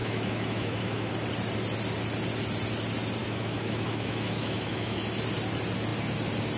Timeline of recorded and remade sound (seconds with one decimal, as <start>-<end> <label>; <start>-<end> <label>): 0.0-1.1 remade; 1.1-3.2 recorded; 3.2-5.0 remade; 5.0-6.6 recorded